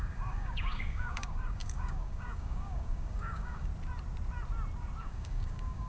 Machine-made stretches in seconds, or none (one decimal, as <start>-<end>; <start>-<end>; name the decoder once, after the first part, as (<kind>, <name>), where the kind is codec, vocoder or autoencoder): 0.0-3.7 (codec, DAC); 5.0-5.9